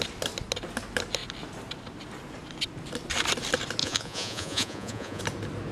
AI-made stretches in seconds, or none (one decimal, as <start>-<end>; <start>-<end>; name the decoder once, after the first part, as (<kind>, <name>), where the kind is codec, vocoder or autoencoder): 3.8-5.2 (vocoder, Vocos)